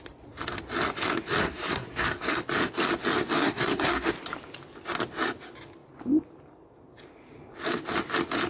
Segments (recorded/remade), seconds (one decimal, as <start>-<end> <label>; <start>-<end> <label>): 0.0-1.4 recorded; 1.4-2.4 remade; 2.4-3.4 recorded; 3.4-4.1 remade; 4.1-8.5 recorded